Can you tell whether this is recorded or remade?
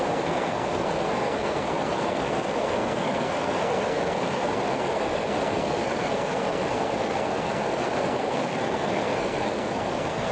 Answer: remade